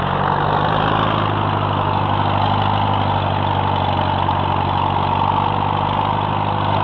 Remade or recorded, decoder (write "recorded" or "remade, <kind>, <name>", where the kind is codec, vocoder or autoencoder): recorded